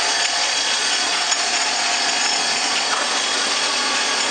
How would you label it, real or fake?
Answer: fake